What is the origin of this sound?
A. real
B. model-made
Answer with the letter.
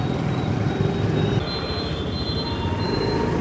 A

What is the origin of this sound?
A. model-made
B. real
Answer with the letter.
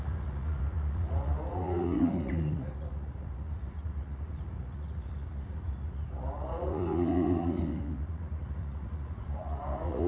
A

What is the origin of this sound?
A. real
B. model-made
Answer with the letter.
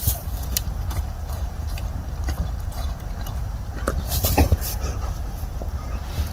B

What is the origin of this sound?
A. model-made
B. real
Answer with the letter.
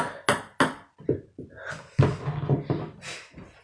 B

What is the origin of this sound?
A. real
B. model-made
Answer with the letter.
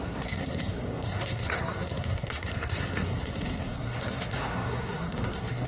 B